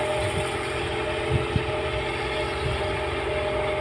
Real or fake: real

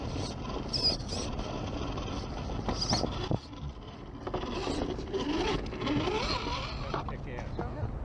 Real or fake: real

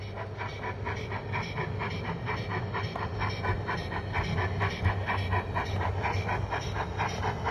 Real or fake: real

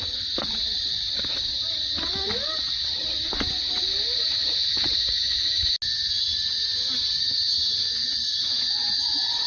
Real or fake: real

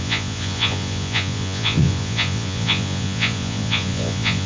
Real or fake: fake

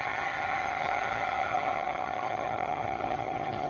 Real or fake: fake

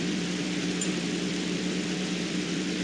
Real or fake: fake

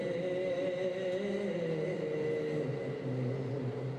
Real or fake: real